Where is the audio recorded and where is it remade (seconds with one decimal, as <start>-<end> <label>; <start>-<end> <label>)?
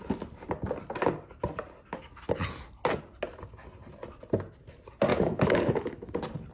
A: 0.0-5.1 recorded; 5.1-6.1 remade; 6.1-6.5 recorded